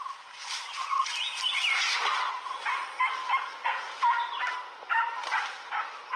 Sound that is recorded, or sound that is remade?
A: recorded